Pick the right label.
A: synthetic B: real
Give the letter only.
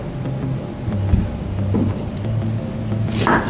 B